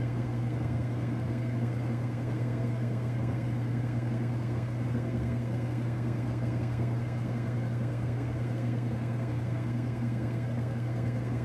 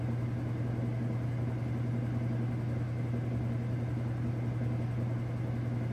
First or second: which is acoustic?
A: second